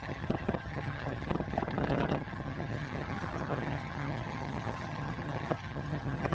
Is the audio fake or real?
fake